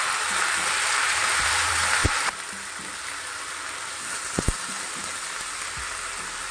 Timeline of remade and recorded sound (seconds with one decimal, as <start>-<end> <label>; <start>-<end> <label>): 0.0-2.0 remade; 2.0-2.9 recorded; 2.9-3.3 remade; 3.3-6.5 recorded